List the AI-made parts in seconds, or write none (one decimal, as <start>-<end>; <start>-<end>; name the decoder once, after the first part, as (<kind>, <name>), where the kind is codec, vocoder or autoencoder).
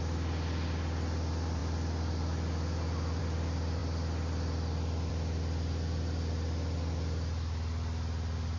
none